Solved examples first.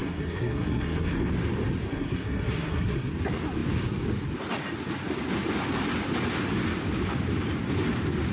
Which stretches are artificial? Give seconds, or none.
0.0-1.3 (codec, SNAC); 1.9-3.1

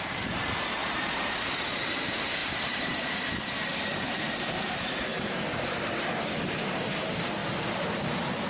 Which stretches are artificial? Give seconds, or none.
0.0-5.1 (vocoder, BigVGAN v2); 6.9-7.4; 8.0-8.5